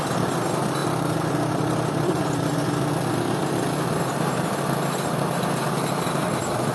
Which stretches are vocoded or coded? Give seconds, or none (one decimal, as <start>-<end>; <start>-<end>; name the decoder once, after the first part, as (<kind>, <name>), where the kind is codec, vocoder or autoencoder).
none